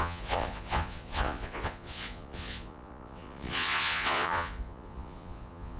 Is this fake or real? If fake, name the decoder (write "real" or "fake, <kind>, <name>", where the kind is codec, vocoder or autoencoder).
fake, vocoder, Vocos